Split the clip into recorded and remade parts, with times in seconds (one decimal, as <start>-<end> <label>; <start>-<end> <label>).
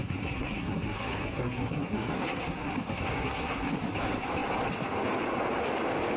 0.0-3.7 remade; 3.7-6.2 recorded